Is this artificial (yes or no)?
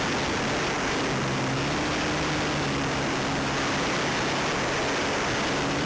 no